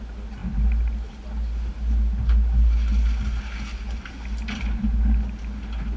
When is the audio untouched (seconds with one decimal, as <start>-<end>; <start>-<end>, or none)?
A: 0.0-6.0